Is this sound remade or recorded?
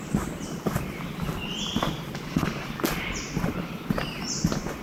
remade